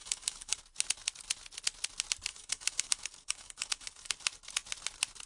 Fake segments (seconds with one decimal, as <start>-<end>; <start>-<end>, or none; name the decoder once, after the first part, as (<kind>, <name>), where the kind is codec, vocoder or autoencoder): 0.0-0.6 (codec, DAC); 2.3-4.1